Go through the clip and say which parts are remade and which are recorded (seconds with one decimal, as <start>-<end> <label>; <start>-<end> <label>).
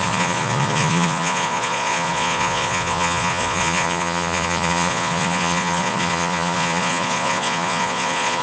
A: 0.0-8.4 remade